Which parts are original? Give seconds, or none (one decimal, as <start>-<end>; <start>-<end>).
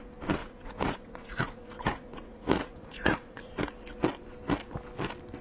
0.0-0.4; 3.6-5.4